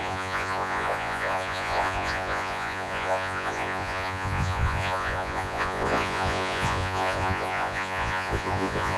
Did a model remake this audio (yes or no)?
yes